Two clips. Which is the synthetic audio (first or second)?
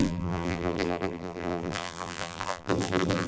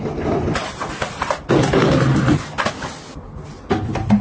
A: first